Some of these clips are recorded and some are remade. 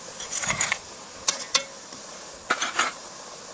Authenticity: recorded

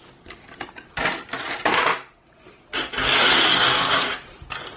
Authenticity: recorded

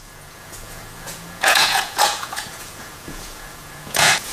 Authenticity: remade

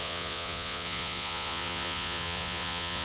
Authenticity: remade